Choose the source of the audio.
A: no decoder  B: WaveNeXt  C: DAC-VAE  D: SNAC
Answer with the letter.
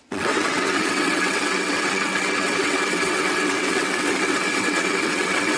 B